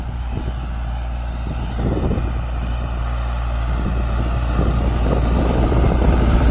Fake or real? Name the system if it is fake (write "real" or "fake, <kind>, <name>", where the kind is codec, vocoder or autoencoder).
fake, vocoder, BigVGAN v2